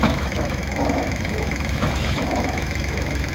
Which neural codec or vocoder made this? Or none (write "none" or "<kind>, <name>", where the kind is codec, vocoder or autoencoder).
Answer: autoencoder, DAC-VAE